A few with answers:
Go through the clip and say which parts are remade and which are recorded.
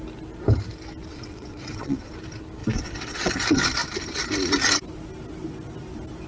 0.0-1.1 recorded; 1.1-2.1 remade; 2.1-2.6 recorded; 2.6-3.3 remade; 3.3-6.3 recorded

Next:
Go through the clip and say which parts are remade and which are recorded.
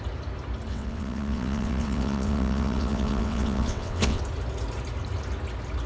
0.0-0.7 recorded; 0.7-4.2 remade; 4.2-5.9 recorded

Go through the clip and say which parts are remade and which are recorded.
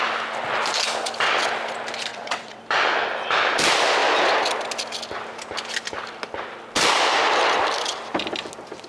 0.0-2.1 recorded; 2.1-2.6 remade; 2.6-8.9 recorded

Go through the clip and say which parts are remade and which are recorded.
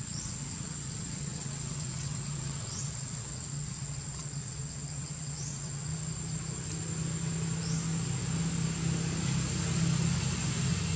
0.0-5.9 remade; 5.9-11.0 recorded